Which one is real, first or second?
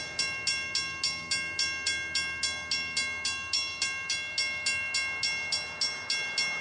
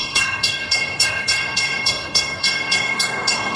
first